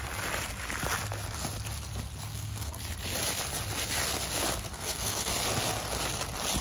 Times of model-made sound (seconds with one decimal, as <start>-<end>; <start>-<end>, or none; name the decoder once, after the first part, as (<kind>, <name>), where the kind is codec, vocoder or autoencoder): 2.3-2.8 (codec, SNAC); 4.7-5.3